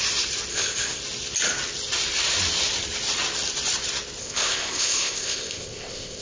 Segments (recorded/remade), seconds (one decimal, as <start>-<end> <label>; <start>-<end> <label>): 0.0-0.5 recorded; 0.5-1.0 remade; 1.0-4.2 recorded; 4.2-6.2 remade